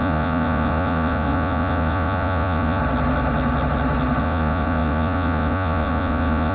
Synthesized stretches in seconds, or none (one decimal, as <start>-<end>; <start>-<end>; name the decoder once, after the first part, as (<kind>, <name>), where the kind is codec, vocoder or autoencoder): 0.0-2.8 (vocoder, Vocos); 4.2-6.5